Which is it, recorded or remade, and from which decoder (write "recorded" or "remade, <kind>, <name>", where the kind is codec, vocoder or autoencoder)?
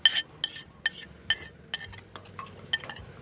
recorded